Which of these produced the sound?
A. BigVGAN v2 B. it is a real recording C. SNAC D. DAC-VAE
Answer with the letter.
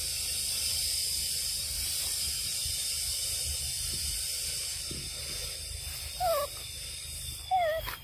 B